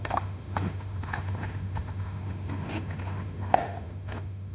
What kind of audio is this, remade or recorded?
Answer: remade